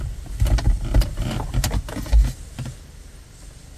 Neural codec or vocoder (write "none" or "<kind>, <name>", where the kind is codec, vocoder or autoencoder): none